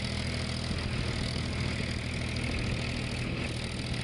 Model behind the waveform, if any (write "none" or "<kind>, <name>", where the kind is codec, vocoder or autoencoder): none